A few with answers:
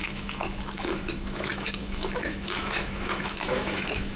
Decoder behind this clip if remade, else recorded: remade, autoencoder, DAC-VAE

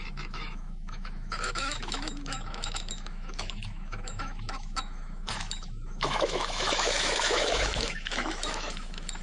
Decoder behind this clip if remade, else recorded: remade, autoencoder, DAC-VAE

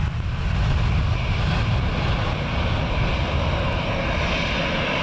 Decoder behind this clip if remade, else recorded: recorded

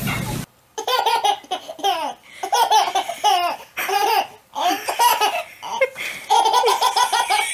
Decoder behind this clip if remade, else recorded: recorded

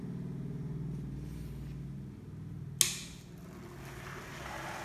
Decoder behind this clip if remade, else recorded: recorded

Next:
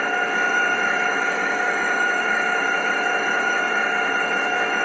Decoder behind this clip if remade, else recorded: remade, autoencoder, DAC-VAE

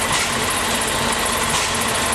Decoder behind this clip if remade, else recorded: recorded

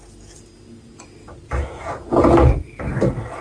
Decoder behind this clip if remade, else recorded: recorded